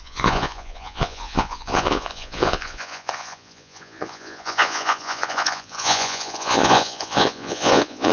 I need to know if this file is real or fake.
fake